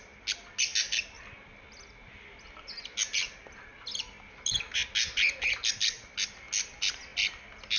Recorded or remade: recorded